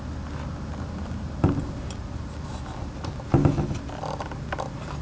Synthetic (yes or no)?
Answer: no